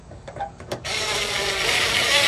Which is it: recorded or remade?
remade